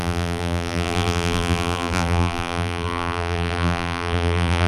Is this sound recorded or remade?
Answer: remade